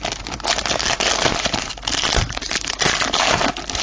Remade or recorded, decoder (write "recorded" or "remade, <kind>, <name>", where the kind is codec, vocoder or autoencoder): recorded